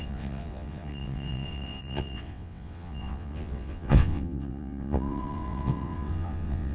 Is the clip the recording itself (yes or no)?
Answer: no